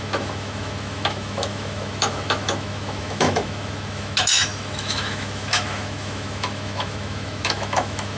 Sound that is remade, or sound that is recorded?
remade